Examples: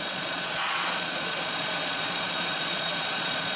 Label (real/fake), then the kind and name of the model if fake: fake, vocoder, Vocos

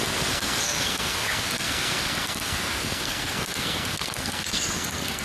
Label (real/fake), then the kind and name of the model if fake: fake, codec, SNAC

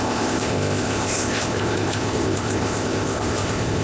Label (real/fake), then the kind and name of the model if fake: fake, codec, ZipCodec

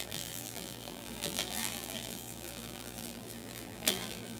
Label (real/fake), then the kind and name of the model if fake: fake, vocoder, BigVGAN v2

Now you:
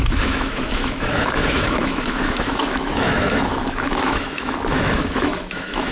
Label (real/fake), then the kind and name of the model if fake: fake, autoencoder, DAC-VAE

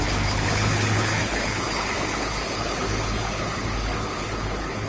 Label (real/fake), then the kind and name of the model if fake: fake, codec, HILCodec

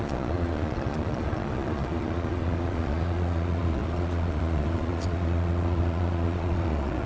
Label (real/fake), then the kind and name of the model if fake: fake, vocoder, Vocos